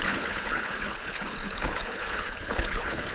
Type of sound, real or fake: fake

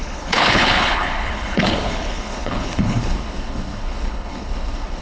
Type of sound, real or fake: fake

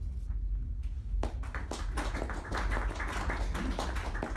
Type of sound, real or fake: real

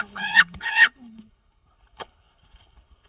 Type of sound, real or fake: fake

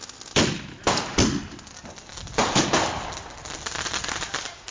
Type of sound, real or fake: real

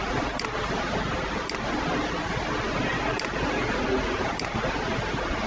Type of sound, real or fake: real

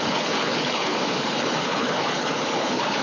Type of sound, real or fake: fake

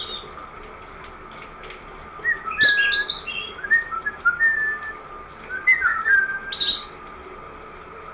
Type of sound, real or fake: real